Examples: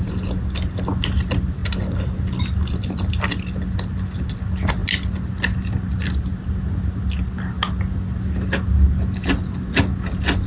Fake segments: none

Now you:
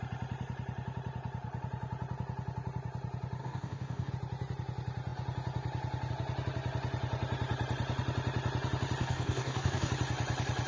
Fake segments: 3.4-4.1 (codec, DAC); 9.0-9.9

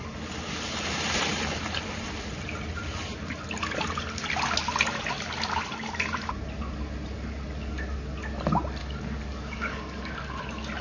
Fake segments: 8.8-10.4 (codec, DAC)

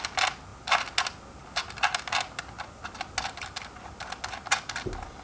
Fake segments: none

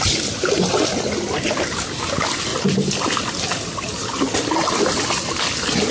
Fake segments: none